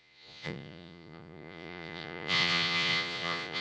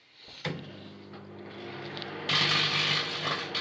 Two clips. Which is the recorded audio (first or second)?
second